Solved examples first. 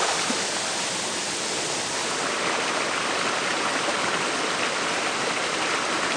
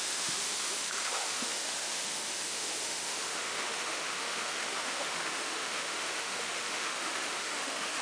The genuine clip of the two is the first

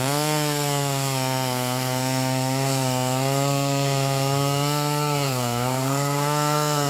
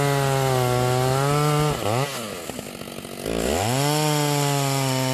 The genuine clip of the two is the second